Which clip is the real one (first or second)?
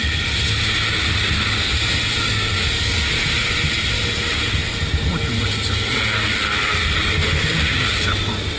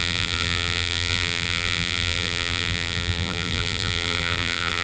first